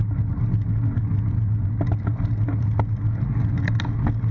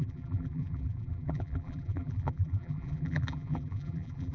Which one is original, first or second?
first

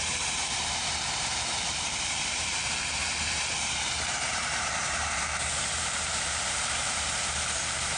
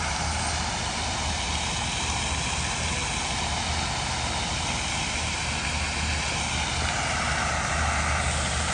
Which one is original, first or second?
second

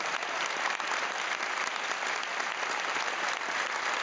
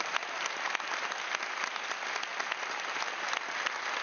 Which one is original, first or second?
second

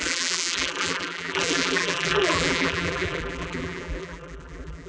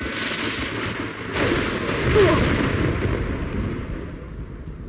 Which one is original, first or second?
second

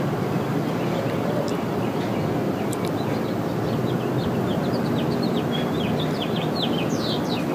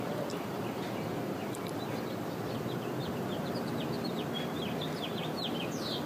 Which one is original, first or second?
first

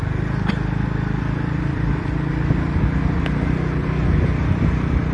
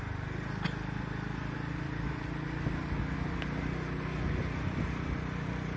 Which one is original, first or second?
second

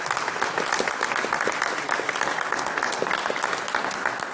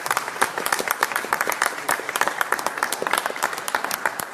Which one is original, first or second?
first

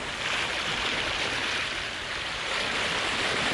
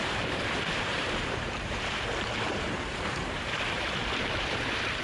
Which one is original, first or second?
first